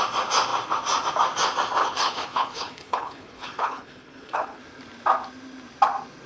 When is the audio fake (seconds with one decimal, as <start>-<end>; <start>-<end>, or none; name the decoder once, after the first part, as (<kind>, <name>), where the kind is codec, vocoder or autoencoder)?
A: 1.8-4.6 (codec, HILCodec)

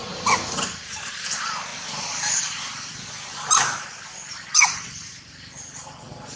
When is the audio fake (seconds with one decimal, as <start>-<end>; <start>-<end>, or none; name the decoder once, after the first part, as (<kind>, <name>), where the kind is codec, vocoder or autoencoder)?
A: none

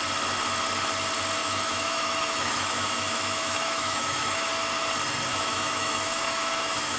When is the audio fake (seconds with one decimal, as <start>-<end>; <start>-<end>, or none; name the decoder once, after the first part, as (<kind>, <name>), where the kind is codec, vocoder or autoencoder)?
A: 1.4-4.5 (autoencoder, DAC-VAE); 5.3-7.0

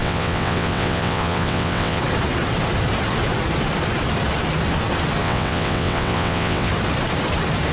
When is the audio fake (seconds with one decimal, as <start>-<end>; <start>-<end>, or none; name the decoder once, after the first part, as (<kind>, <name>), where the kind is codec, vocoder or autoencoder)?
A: 0.0-2.0 (vocoder, WaveNeXt); 5.2-6.7

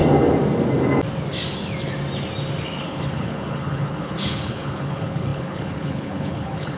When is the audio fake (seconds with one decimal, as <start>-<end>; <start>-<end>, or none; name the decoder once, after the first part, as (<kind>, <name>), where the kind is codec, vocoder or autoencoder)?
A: 2.8-6.8 (codec, HILCodec)

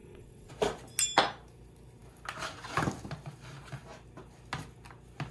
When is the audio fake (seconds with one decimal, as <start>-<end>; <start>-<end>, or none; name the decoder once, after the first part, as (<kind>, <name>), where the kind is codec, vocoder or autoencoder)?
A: 0.0-0.5 (vocoder, WaveNeXt)

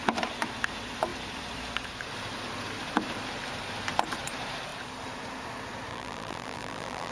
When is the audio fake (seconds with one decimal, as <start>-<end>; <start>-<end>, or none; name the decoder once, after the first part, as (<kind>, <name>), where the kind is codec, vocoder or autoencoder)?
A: 5.9-7.1 (vocoder, BigVGAN v2)